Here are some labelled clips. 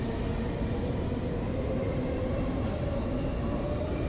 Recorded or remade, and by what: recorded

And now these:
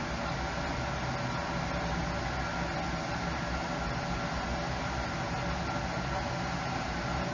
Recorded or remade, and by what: recorded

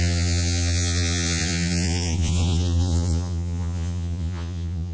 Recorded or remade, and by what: remade, vocoder, Vocos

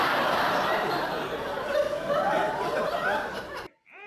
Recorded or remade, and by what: remade, vocoder, BigVGAN v2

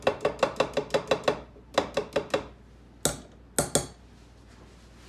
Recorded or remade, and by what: recorded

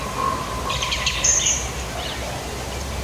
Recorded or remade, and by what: remade, vocoder, BigVGAN v2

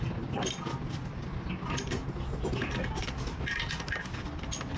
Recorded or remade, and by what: recorded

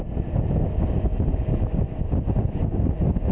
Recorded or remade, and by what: recorded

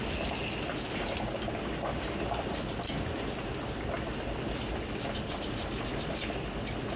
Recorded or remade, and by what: recorded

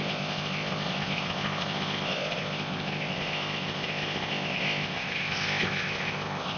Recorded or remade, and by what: remade, codec, ZipCodec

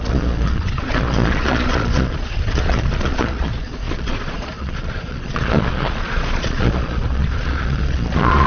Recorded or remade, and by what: remade, vocoder, Vocos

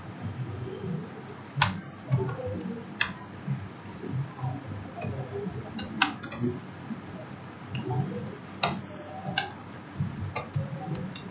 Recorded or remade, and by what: recorded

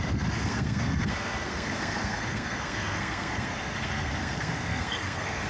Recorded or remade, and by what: remade, codec, SNAC